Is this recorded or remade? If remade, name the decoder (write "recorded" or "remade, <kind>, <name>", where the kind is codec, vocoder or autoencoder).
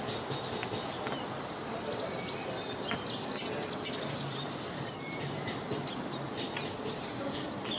recorded